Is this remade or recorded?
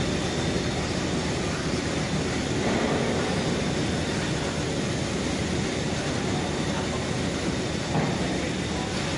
recorded